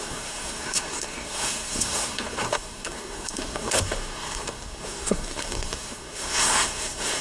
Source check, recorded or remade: remade